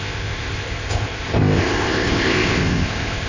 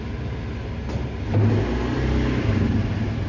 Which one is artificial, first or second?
first